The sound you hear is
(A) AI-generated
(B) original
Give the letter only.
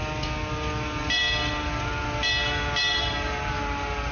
B